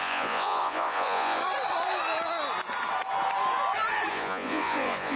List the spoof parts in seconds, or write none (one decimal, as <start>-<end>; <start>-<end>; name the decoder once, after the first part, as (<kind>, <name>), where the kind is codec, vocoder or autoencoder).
0.0-1.4 (vocoder, Vocos); 4.1-5.2